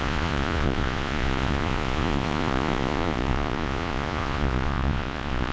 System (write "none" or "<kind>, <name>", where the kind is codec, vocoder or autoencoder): vocoder, Vocos